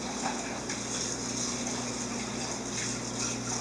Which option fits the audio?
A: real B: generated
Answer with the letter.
A